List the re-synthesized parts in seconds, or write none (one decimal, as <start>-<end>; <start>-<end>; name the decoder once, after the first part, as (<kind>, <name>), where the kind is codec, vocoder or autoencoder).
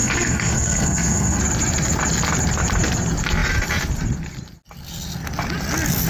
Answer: 0.0-1.4 (codec, SNAC)